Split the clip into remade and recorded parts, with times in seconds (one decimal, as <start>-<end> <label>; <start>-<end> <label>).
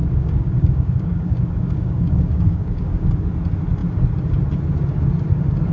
0.0-3.3 remade; 3.3-5.7 recorded